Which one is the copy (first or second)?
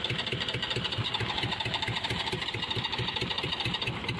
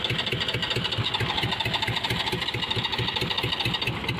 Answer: first